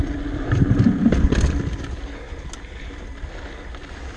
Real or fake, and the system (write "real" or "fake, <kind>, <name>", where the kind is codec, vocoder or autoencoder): real